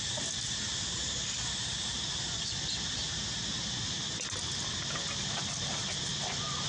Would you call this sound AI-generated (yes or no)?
no